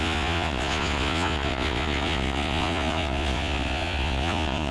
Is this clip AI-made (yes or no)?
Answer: yes